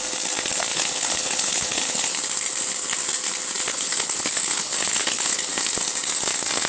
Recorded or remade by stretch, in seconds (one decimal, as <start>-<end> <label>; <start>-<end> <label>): 0.0-0.7 recorded; 0.7-2.2 remade; 2.2-3.7 recorded; 3.7-5.5 remade; 5.5-6.7 recorded